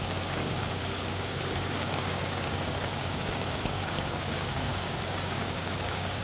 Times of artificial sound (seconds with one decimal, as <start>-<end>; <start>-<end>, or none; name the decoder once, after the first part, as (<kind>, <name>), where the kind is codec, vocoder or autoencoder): 0.0-6.2 (codec, DAC)